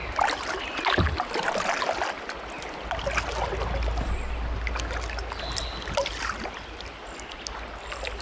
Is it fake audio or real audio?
real